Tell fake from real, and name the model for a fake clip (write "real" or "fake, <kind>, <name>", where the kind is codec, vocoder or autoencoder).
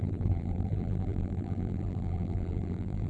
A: fake, vocoder, BigVGAN v2